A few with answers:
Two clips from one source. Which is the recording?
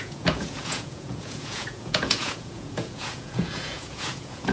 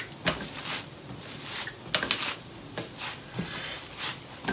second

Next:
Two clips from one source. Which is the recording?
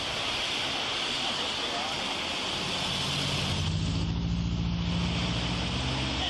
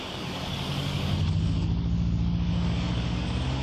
first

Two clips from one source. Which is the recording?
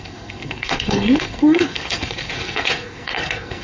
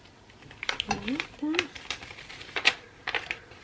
second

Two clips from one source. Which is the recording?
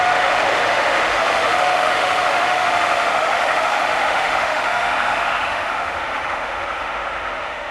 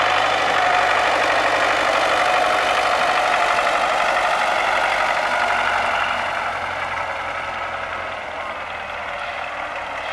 second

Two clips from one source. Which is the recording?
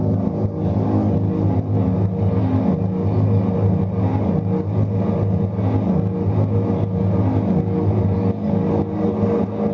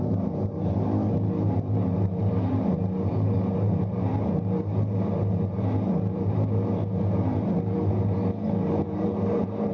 first